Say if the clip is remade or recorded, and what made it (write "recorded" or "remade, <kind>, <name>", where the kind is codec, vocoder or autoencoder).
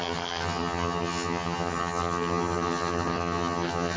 remade, vocoder, HiFi-GAN